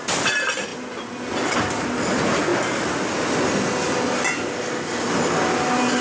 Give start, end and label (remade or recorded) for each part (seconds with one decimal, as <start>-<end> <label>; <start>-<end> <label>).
0.0-6.0 recorded